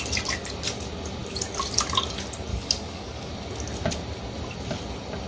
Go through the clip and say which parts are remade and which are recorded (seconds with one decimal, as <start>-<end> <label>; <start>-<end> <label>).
0.0-2.5 recorded; 2.5-3.3 remade; 3.3-5.3 recorded